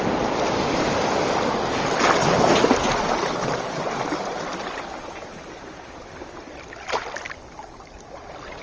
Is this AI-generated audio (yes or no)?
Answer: no